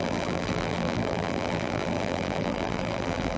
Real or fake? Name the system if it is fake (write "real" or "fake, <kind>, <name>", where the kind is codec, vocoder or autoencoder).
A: fake, vocoder, BigVGAN v2